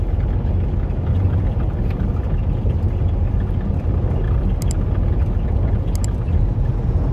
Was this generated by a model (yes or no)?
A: no